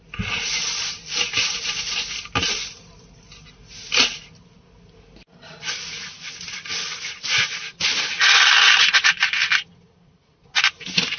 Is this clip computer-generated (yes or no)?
no